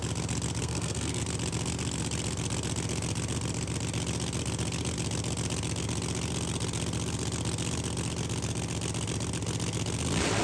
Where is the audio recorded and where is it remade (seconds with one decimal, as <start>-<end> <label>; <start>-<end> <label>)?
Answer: 0.0-0.6 recorded; 0.6-1.2 remade; 1.2-10.4 recorded